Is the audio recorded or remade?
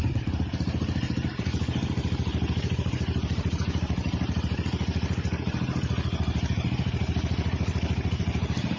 remade